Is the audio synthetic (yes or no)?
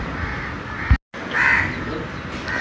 no